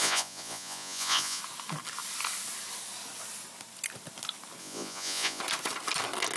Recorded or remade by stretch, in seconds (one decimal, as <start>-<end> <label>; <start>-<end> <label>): 0.0-1.4 remade; 1.4-4.6 recorded; 4.6-5.4 remade; 5.4-6.4 recorded